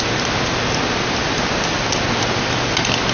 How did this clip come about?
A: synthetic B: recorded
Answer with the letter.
B